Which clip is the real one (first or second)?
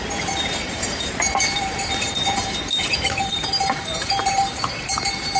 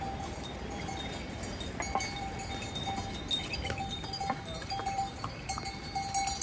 second